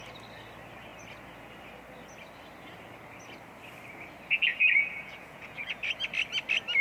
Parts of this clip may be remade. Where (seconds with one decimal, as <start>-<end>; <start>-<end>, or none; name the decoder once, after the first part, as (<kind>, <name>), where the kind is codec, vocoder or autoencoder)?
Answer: 4.5-6.0 (vocoder, Vocos)